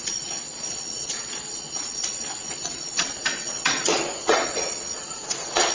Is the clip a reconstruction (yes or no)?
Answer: yes